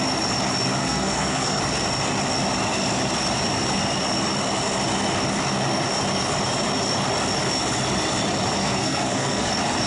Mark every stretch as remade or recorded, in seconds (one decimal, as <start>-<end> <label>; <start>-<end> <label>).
0.0-0.8 recorded; 0.8-1.6 remade; 1.6-8.6 recorded; 8.6-9.5 remade; 9.5-9.9 recorded